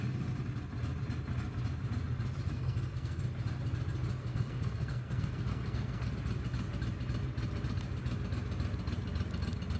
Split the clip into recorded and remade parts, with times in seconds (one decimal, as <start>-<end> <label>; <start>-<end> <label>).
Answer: 0.0-2.5 recorded; 2.5-3.2 remade; 3.2-4.2 recorded; 4.2-6.1 remade; 6.1-9.8 recorded